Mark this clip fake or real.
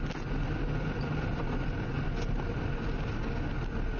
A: real